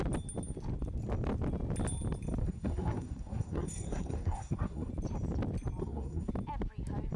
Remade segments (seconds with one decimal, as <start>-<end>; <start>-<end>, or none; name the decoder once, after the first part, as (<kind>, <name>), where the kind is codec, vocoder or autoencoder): 2.4-4.9 (codec, SNAC); 5.8-6.3